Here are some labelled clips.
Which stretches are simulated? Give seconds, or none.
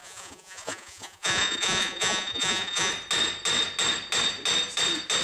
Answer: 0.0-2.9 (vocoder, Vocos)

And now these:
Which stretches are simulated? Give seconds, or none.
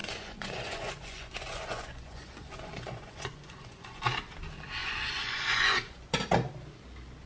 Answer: 0.0-4.0 (vocoder, Vocos); 4.8-6.1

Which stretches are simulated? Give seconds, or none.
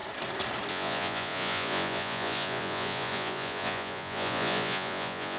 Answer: 0.7-5.4 (vocoder, Vocos)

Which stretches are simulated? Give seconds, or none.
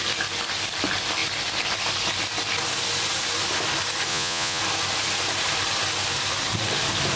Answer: 4.1-4.6 (vocoder, Vocos)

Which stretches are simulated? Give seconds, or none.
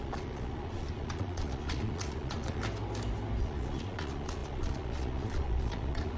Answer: 0.0-2.6 (vocoder, Vocos); 3.4-6.2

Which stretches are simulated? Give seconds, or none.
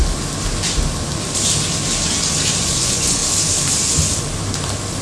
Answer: 2.6-3.2 (vocoder, Vocos)